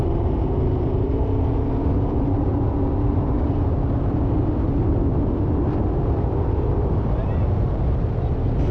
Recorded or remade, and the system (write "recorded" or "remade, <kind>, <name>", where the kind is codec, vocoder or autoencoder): remade, vocoder, BigVGAN v2